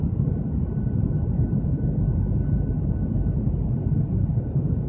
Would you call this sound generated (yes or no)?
no